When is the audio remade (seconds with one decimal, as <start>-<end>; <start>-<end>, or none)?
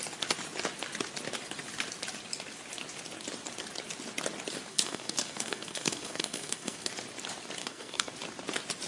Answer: 4.7-6.9; 7.6-8.1